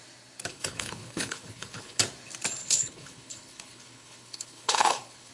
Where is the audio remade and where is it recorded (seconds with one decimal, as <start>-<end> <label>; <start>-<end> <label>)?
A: 0.0-0.5 recorded; 0.5-2.0 remade; 2.0-2.6 recorded; 2.6-5.3 remade

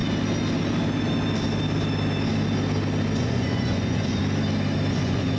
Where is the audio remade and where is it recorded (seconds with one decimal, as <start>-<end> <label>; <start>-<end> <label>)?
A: 0.0-3.2 recorded; 3.2-4.2 remade; 4.2-4.9 recorded; 4.9-5.4 remade

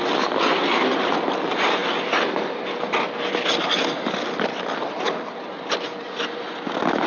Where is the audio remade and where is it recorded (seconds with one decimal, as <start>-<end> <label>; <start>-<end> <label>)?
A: 0.0-7.1 recorded

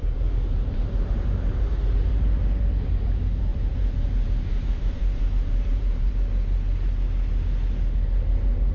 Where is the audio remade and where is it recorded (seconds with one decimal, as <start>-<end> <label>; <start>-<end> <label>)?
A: 0.0-3.0 remade; 3.0-3.5 recorded; 3.5-6.1 remade; 6.1-8.7 recorded

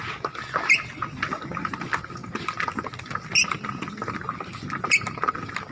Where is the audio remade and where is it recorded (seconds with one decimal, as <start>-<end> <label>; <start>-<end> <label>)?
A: 0.0-5.7 recorded

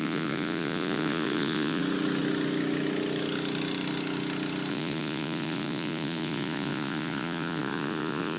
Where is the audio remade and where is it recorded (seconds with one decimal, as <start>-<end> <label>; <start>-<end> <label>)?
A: 0.0-1.8 remade; 1.8-4.7 recorded; 4.7-8.4 remade

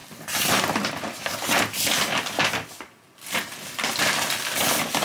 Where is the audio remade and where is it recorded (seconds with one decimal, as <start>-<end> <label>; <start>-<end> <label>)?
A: 0.0-5.0 recorded